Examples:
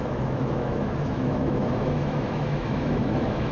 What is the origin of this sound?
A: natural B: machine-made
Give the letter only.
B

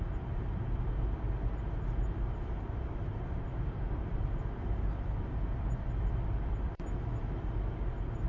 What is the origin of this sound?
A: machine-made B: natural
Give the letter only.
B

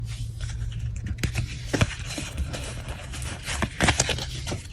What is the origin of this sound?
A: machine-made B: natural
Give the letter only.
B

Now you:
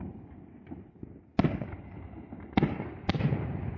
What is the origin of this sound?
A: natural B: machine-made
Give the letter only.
A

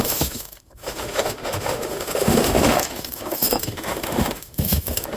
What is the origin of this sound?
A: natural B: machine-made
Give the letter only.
B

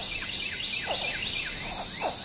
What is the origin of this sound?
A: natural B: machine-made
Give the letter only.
A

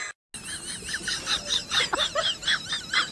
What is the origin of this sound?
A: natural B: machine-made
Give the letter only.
A